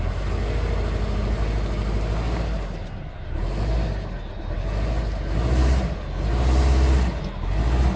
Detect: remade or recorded recorded